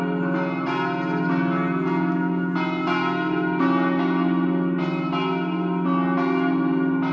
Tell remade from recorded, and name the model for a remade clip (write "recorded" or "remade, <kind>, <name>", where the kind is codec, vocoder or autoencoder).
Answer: recorded